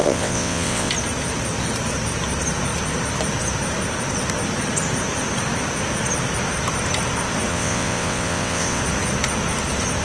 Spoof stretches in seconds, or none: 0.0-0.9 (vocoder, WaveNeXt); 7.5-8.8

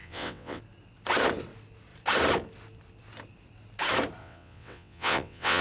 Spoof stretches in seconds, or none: 0.0-0.6 (vocoder, WaveNeXt); 4.2-5.6